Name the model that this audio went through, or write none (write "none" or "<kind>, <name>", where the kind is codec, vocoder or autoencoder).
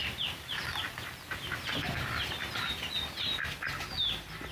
none